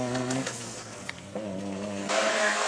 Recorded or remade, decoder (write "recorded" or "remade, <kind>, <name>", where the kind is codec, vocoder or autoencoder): remade, codec, SNAC